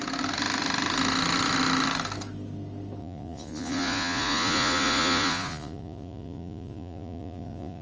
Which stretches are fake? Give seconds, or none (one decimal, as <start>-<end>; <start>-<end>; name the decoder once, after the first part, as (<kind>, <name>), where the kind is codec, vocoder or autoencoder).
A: 3.0-7.8 (vocoder, Vocos)